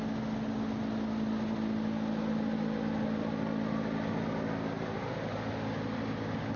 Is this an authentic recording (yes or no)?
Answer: yes